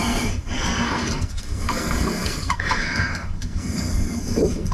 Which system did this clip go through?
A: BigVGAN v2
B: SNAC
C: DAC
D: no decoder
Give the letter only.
B